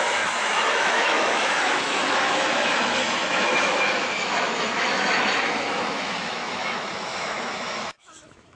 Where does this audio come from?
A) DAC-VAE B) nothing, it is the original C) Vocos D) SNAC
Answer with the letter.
A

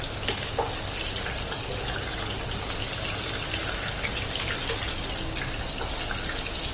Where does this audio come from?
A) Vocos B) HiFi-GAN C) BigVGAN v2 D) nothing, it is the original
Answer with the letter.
D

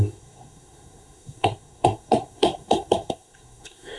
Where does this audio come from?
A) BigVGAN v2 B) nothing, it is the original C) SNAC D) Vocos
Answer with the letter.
C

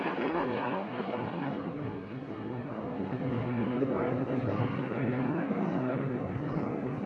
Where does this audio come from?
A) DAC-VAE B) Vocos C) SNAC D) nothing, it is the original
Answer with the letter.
C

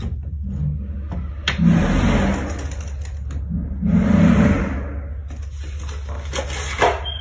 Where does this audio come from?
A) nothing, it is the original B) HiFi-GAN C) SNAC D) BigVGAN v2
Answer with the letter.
A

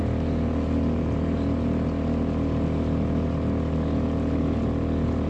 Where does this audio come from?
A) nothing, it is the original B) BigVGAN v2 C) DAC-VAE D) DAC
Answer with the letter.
A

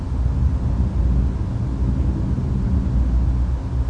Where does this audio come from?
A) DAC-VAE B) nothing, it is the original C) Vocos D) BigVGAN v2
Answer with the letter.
B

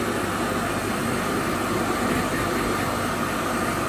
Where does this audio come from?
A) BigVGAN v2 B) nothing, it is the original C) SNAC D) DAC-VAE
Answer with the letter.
B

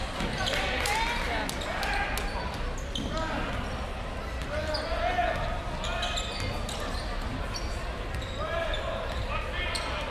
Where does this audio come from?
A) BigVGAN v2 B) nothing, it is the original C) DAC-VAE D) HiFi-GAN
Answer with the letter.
B